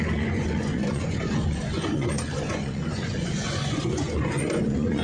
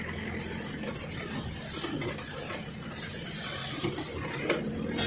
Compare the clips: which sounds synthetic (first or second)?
first